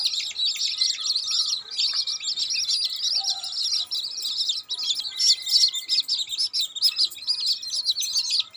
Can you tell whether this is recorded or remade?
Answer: recorded